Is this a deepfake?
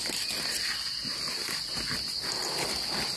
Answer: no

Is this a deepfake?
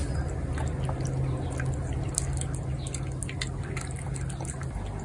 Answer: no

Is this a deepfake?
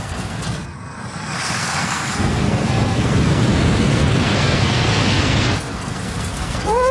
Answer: yes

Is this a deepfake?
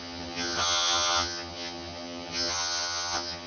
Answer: yes